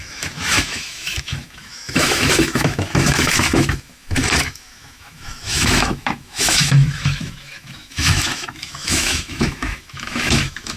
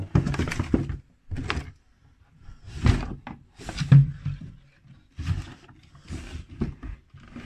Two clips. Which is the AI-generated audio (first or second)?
first